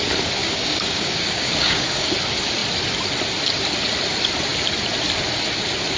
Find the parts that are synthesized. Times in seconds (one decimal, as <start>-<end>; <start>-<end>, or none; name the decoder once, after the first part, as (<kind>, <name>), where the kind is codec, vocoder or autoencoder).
0.4-2.1 (codec, DAC)